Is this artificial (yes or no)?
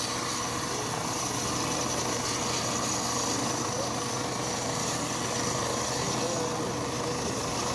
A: no